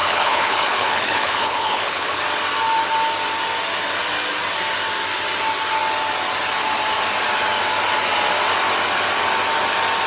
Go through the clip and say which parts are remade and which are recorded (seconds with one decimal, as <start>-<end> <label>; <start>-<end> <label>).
0.0-2.2 remade; 2.2-10.1 recorded